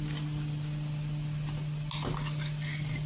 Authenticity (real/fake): real